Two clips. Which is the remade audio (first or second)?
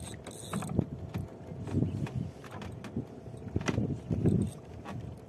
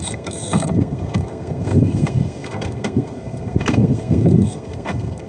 second